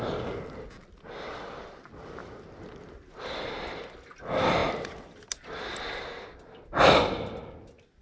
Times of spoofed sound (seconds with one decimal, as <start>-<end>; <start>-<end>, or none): none